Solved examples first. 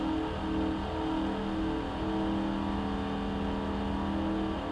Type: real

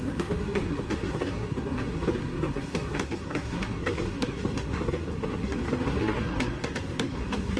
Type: fake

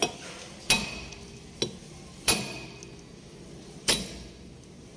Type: real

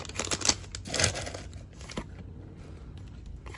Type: real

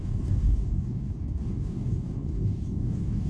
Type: fake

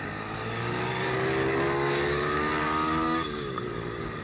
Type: fake